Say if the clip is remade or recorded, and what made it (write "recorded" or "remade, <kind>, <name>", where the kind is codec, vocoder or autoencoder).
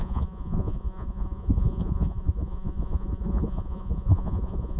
remade, vocoder, Vocos